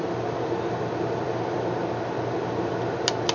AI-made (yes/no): no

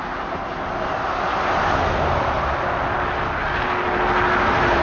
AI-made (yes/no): no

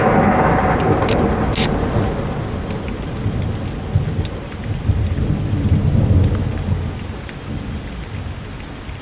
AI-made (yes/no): no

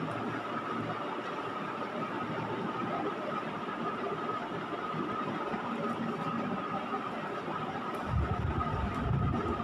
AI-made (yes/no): no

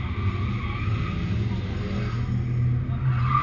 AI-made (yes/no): no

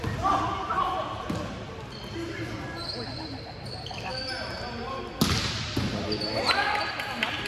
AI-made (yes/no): no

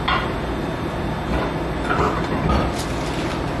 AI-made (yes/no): no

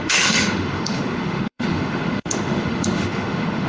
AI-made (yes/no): yes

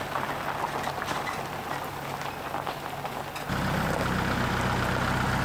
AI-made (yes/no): no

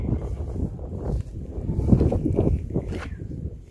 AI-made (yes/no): no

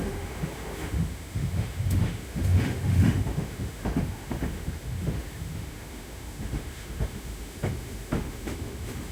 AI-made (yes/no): yes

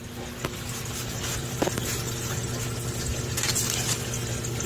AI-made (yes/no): no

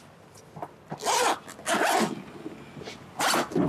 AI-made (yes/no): no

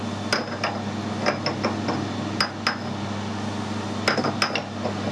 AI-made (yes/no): no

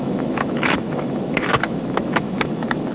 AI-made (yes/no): yes